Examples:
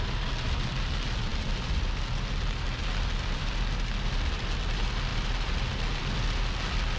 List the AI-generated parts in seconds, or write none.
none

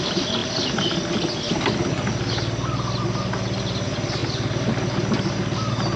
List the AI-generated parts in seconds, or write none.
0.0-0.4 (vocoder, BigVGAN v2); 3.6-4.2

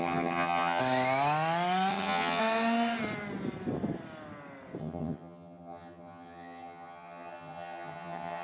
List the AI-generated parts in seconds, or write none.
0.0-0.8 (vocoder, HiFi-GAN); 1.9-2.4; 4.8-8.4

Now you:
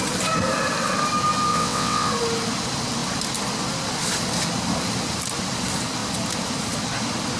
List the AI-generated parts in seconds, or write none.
1.5-2.1 (vocoder, WaveNeXt)

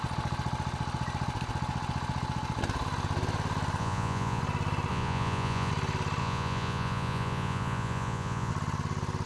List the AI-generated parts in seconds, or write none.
3.8-4.4 (vocoder, Vocos); 4.9-5.7; 6.2-8.5

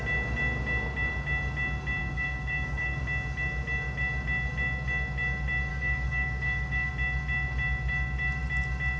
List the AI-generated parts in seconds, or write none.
2.0-3.0 (codec, DAC); 5.7-6.9